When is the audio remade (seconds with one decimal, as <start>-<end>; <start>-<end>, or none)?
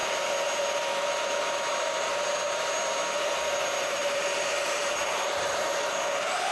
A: 4.0-5.9